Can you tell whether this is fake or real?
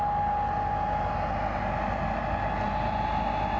real